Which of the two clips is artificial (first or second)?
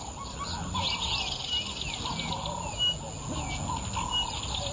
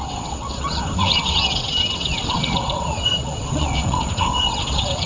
second